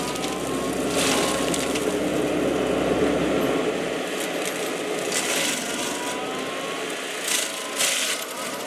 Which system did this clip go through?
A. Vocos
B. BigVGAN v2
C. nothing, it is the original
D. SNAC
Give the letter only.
C